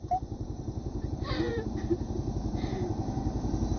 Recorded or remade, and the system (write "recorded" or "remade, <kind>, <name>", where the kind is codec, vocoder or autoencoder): remade, vocoder, BigVGAN v2